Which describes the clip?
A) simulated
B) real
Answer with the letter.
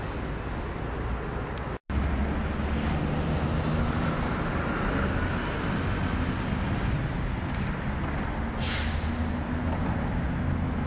B